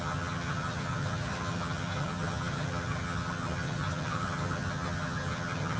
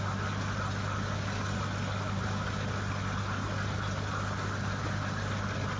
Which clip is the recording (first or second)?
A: second